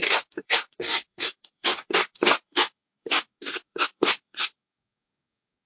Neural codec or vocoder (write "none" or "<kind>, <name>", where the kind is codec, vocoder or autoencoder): codec, DAC